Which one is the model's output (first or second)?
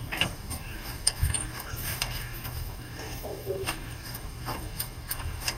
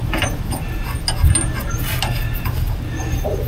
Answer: first